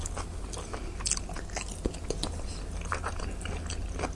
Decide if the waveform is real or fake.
real